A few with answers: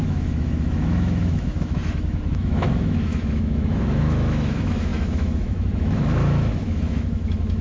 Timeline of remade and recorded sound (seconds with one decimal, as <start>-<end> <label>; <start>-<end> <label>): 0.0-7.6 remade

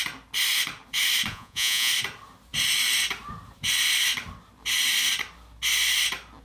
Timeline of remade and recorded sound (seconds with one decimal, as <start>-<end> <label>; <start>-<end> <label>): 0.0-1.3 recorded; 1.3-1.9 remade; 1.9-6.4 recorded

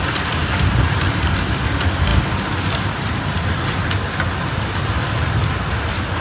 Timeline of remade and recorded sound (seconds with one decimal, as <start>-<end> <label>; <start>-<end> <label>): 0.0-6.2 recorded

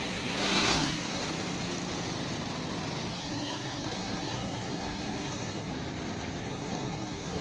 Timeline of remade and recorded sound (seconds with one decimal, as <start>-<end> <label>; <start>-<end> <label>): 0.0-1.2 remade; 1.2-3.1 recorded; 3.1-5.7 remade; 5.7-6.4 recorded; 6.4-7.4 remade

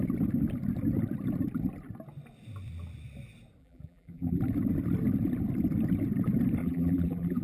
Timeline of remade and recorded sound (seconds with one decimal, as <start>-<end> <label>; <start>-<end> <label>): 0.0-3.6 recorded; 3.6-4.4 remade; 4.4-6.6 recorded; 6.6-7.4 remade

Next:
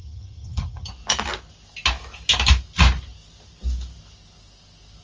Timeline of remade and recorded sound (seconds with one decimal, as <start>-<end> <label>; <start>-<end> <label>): 0.0-0.9 remade; 0.9-5.0 recorded

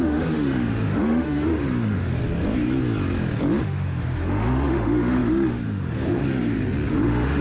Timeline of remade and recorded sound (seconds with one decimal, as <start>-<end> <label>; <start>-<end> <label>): 0.0-2.2 remade; 2.2-3.6 recorded; 3.6-6.2 remade; 6.2-6.9 recorded; 6.9-7.4 remade